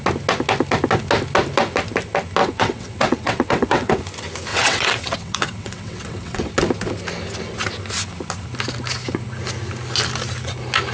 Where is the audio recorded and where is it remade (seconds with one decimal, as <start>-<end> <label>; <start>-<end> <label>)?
0.0-2.4 recorded; 2.4-4.0 remade; 4.0-4.5 recorded; 4.5-6.5 remade; 6.5-10.9 recorded